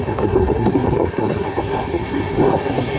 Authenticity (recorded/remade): remade